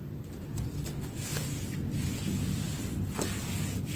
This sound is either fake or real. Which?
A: real